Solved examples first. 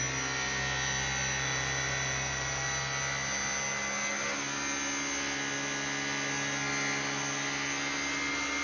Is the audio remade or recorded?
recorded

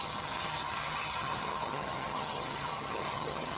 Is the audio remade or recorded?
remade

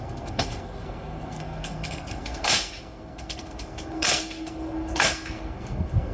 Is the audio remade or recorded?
remade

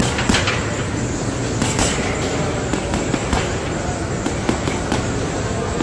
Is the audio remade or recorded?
recorded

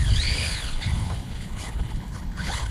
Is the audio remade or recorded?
remade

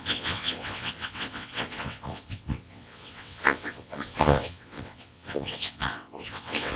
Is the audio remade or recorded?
remade